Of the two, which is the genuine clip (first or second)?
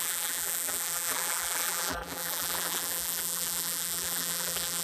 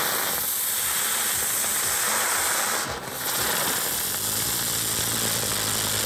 second